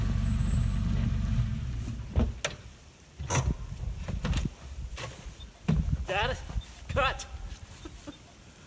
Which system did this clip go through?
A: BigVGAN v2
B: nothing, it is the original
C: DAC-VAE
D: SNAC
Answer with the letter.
B